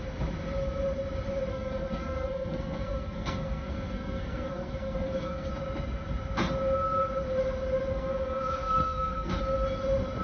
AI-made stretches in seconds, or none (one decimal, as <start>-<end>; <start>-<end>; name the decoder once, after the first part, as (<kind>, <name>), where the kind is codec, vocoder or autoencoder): 1.5-5.5 (codec, SNAC); 7.9-9.4